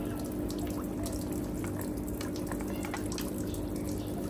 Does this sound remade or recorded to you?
recorded